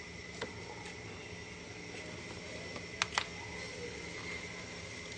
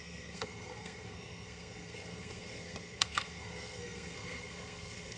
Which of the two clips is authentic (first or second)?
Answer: first